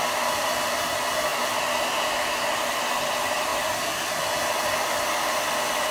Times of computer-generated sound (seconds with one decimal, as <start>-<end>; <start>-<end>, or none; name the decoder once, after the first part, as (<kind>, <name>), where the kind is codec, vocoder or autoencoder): none